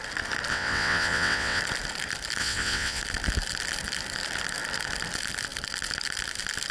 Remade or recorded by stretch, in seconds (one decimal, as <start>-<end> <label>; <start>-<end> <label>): 0.0-0.5 recorded; 0.5-1.6 remade; 1.6-2.4 recorded; 2.4-3.0 remade; 3.0-6.7 recorded